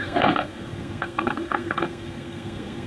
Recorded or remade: remade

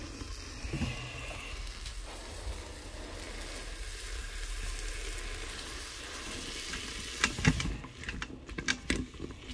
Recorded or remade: recorded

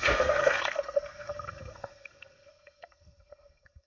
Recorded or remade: remade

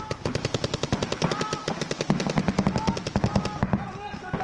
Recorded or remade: recorded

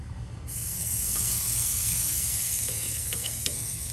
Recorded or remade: remade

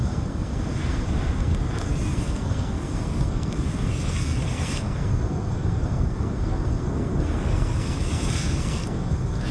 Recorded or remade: remade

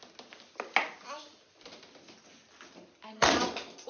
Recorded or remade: recorded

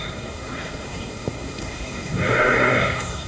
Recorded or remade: remade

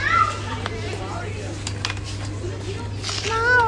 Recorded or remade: recorded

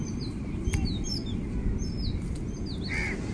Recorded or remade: recorded